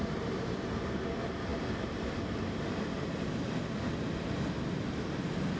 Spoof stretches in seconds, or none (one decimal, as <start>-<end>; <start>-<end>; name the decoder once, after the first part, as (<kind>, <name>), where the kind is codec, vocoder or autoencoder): none